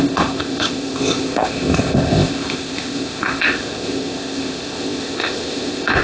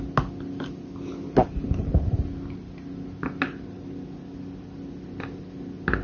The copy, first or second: first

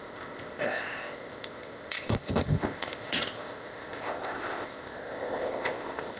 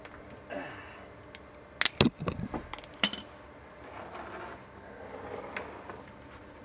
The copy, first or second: first